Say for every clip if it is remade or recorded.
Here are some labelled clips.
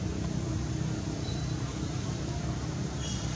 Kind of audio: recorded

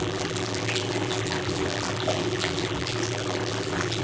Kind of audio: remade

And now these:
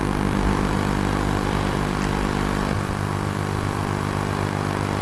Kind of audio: remade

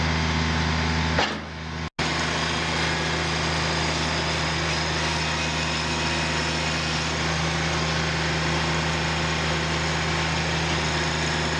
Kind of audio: recorded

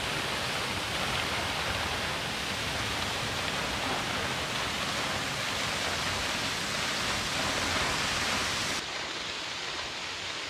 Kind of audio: recorded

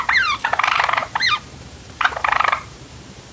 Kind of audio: remade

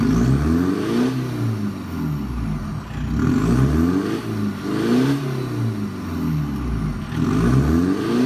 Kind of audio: recorded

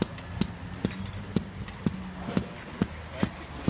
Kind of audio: recorded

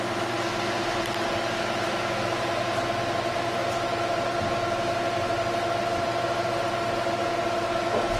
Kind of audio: recorded